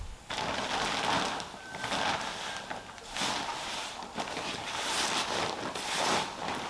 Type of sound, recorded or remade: recorded